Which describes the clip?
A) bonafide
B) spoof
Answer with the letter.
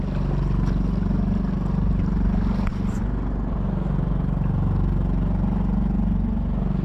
A